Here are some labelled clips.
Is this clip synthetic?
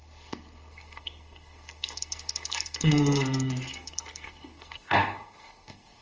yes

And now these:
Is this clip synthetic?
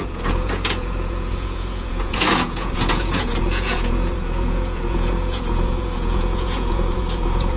yes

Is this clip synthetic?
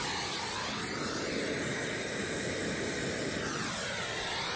no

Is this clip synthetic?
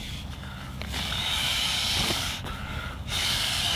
yes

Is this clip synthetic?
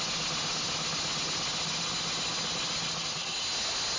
no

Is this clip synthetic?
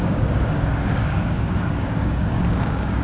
yes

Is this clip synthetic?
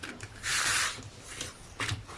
yes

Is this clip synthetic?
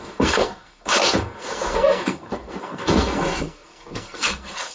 yes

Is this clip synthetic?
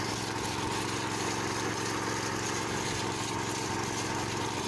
no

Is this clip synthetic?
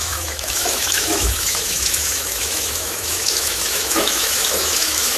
yes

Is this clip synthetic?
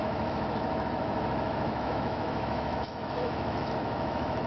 yes